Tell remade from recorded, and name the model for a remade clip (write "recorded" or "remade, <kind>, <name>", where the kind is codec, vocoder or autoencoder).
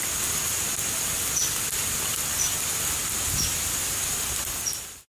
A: recorded